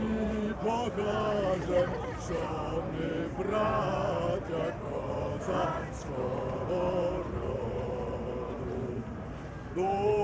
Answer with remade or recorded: remade